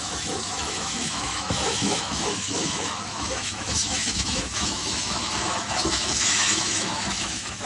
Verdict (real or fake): fake